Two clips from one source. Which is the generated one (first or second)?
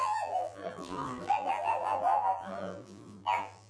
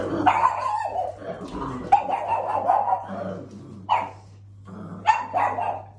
first